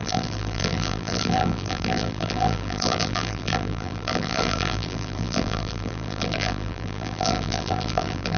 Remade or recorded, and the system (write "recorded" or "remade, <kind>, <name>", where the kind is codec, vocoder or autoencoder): remade, vocoder, BigVGAN v2